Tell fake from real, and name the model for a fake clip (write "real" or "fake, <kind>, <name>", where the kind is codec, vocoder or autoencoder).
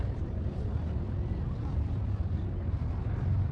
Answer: real